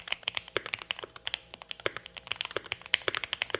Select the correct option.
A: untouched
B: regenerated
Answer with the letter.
A